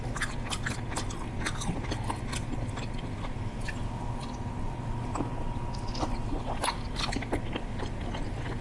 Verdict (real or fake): real